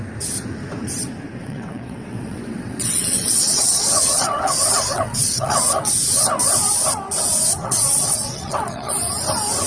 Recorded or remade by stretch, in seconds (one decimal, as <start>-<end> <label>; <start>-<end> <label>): 0.0-1.4 recorded; 1.4-5.9 remade; 5.9-7.6 recorded; 7.6-8.9 remade; 8.9-9.7 recorded